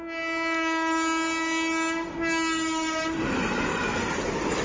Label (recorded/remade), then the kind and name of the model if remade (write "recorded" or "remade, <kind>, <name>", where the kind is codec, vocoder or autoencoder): recorded